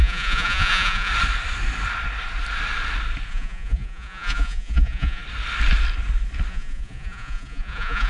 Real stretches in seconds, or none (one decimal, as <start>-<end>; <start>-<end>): 1.1-3.3; 5.2-6.5